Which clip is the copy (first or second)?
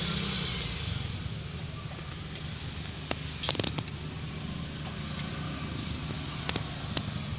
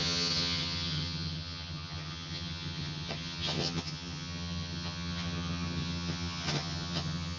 second